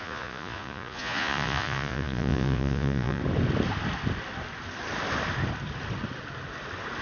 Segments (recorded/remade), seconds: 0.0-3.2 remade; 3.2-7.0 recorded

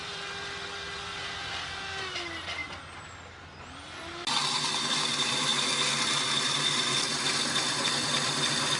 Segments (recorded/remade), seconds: 0.0-2.6 remade; 2.6-4.5 recorded; 4.5-5.5 remade; 5.5-6.7 recorded; 6.7-8.8 remade

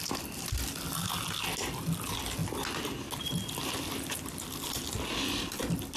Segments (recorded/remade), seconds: 0.0-6.0 recorded